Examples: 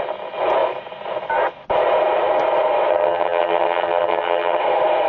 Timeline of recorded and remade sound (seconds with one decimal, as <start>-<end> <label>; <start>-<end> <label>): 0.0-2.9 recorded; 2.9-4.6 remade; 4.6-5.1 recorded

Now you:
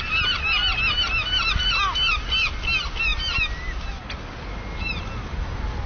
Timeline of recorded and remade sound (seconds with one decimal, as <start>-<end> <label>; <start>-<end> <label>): 0.0-5.9 recorded

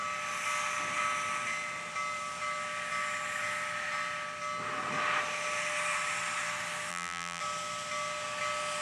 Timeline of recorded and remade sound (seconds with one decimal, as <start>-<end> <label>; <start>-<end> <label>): 0.0-6.9 recorded; 6.9-7.4 remade; 7.4-8.8 recorded

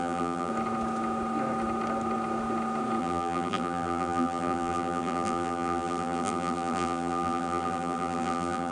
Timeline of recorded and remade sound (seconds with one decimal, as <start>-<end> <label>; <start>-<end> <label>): 0.0-0.5 remade; 0.5-3.0 recorded; 3.0-8.7 remade

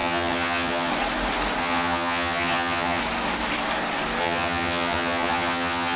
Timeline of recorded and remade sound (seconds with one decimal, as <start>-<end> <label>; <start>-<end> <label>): 0.0-0.9 remade; 0.9-1.6 recorded; 1.6-3.0 remade; 3.0-4.2 recorded; 4.2-6.0 remade